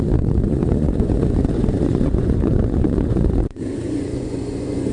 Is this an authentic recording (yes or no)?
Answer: no